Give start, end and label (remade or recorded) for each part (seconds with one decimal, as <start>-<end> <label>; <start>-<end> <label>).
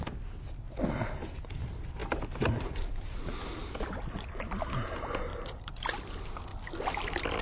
0.0-2.0 recorded; 2.0-3.7 remade; 3.7-5.3 recorded; 5.3-6.0 remade; 6.0-7.4 recorded